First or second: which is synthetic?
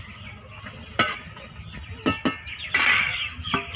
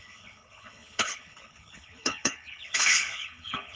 second